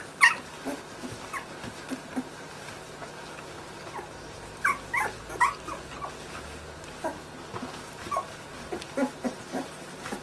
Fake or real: real